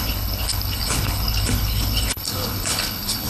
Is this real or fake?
fake